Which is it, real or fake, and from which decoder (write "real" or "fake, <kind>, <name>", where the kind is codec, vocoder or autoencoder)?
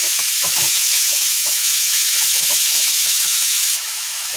fake, autoencoder, DAC-VAE